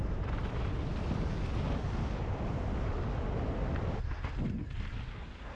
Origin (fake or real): real